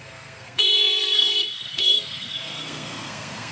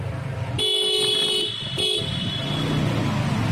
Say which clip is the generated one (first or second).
first